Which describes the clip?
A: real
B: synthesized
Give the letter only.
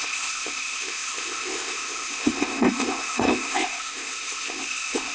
B